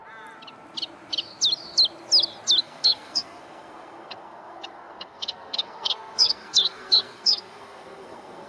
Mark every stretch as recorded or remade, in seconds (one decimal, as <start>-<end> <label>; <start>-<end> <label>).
0.0-2.6 recorded; 2.6-8.5 remade